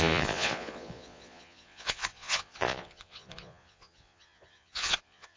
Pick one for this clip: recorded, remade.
remade